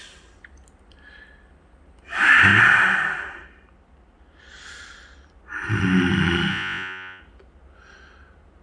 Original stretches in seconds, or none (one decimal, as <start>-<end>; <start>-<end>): 0.0-6.5; 7.2-8.6